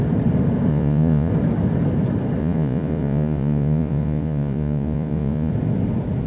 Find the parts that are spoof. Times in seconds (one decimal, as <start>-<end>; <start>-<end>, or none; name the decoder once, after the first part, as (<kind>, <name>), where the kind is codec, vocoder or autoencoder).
0.7-1.3 (vocoder, Vocos); 2.4-5.5